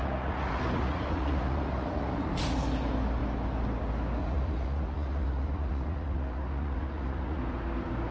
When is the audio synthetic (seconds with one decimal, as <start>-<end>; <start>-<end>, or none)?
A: 0.0-2.3; 4.2-7.4